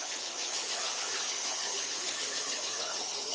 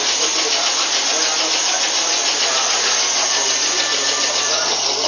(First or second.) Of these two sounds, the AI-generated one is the first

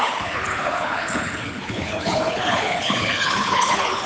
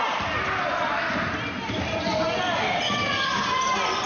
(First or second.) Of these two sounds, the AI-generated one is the first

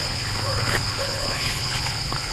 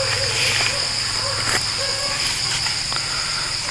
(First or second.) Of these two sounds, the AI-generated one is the first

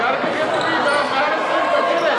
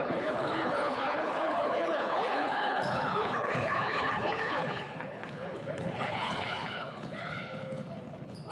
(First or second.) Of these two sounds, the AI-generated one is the second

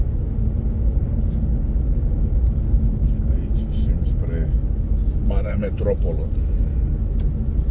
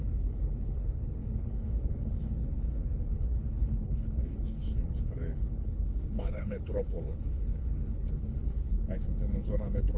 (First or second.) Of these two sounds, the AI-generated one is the second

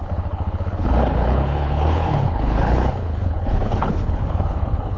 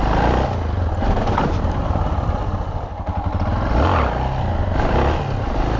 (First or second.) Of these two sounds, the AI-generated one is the first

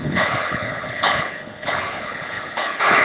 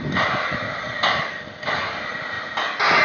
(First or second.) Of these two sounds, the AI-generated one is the first